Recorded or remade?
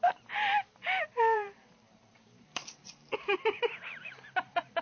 remade